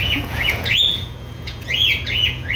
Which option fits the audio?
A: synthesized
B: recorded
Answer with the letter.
A